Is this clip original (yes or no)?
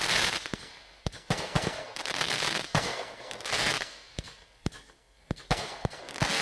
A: no